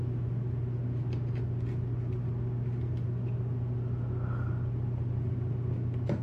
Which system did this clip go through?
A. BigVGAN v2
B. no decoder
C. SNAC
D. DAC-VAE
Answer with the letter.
B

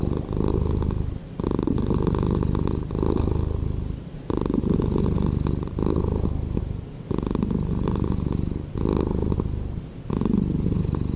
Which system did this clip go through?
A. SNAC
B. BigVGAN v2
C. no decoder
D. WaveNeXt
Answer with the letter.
C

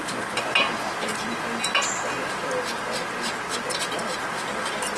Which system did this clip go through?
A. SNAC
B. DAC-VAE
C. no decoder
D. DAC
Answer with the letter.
C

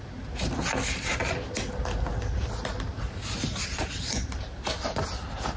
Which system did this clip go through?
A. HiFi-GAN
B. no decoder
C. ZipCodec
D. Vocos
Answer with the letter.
B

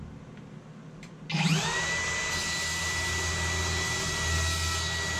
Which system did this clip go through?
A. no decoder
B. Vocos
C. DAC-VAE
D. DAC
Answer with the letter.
A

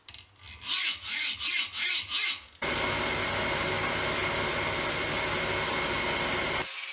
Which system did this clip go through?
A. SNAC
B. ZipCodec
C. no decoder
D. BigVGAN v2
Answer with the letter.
C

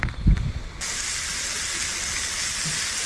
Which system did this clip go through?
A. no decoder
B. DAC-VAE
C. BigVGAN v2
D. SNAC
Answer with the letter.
A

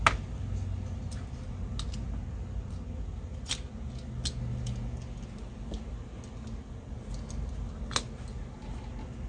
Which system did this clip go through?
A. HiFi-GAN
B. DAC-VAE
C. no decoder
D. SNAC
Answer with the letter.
C